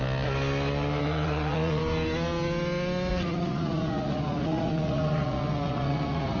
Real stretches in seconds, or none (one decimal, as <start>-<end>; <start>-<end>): 0.0-1.0; 1.8-3.1